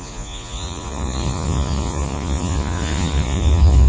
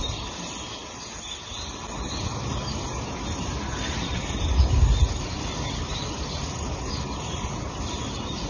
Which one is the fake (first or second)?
first